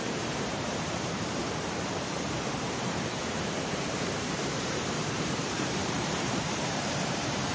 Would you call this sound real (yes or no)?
no